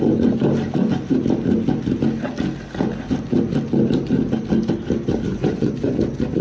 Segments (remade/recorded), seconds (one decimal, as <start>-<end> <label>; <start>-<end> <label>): 0.0-5.3 recorded; 5.3-6.0 remade; 6.0-6.4 recorded